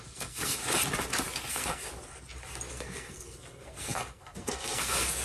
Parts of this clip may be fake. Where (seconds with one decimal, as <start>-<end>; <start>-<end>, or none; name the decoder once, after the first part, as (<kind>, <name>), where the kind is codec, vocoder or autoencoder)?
0.0-0.6 (codec, SNAC); 1.5-1.9; 2.7-5.2